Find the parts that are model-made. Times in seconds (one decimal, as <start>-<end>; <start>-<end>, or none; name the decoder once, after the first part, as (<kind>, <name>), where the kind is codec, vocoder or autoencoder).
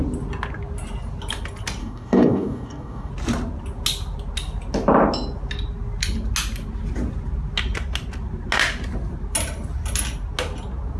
1.8-3.1 (codec, DAC)